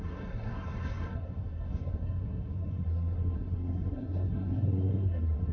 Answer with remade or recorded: remade